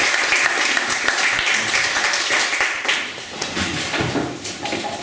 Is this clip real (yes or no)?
yes